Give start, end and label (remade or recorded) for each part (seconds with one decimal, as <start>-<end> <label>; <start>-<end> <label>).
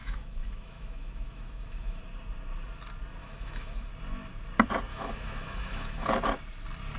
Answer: 0.0-2.0 remade; 2.0-3.2 recorded; 3.2-3.9 remade; 3.9-4.9 recorded; 4.9-6.1 remade; 6.1-7.0 recorded